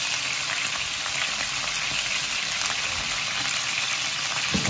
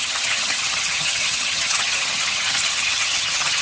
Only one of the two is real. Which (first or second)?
first